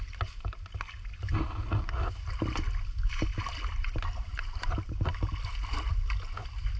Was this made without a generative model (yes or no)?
yes